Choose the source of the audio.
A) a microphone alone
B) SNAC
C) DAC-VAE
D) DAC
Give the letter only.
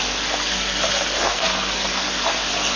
B